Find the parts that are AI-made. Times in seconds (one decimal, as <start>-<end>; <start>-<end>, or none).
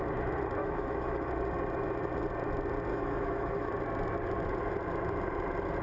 0.6-1.3; 2.9-3.7